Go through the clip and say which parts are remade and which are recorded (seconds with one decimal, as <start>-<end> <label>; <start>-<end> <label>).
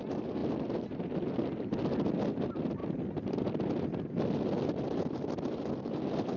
0.0-6.4 recorded